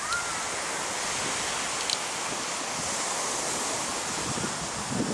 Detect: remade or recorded recorded